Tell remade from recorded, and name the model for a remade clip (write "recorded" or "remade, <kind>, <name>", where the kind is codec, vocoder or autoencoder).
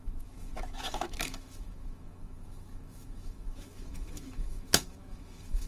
remade, autoencoder, DAC-VAE